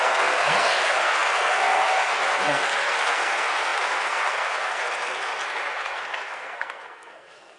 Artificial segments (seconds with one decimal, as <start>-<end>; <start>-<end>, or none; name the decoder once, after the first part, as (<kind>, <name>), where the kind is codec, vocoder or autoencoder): 0.0-7.6 (codec, SNAC)